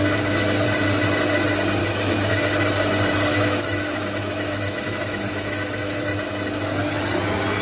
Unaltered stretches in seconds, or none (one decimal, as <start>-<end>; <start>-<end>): 0.0-1.8; 2.3-3.3; 6.0-7.6